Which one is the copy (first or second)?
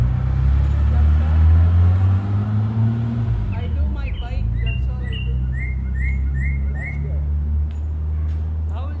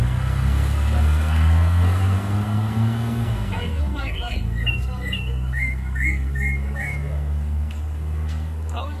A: second